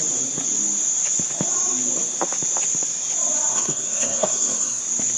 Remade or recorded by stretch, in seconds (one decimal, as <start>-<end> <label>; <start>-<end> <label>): 0.0-3.5 recorded; 3.5-4.8 remade; 4.8-5.2 recorded